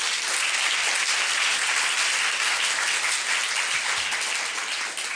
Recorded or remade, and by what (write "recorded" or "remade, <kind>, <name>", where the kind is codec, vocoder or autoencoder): recorded